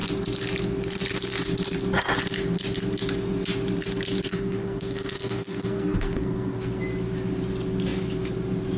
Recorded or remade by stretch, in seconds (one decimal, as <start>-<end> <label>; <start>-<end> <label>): 0.0-4.3 recorded; 4.3-6.8 remade; 6.8-8.8 recorded